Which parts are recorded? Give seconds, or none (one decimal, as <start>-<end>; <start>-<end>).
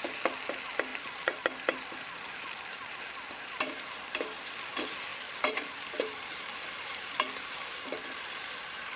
0.0-9.0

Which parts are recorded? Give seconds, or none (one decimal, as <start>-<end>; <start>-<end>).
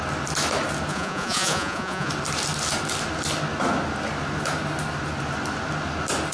0.0-0.9; 2.1-6.3